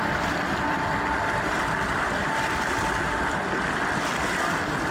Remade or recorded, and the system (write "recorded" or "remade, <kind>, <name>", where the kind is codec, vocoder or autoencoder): recorded